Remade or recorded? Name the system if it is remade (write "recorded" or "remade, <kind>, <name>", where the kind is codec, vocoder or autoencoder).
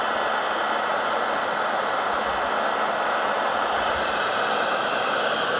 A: recorded